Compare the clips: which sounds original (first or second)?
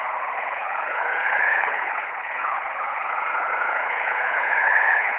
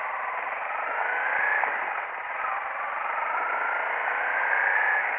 second